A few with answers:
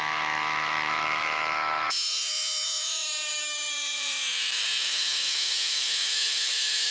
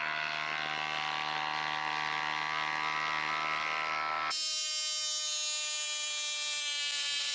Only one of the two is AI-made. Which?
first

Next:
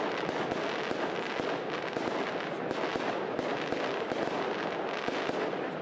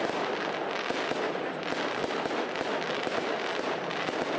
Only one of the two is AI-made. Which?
second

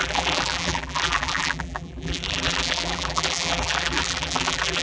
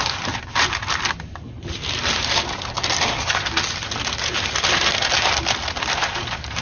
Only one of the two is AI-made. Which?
first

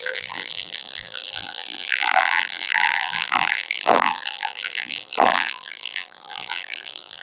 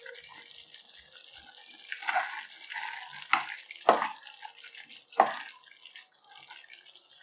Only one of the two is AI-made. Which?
first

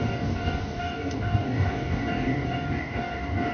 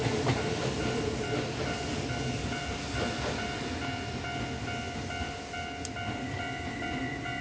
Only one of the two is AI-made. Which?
first